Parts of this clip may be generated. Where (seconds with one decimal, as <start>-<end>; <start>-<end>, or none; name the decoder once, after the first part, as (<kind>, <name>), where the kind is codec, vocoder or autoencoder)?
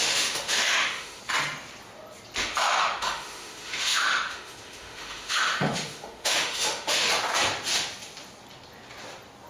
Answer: 0.0-1.2 (autoencoder, DAC-VAE); 2.4-7.1